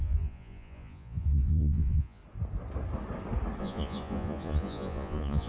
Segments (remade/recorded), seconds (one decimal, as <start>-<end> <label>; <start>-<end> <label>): 0.0-2.2 remade; 2.2-3.6 recorded; 3.6-5.5 remade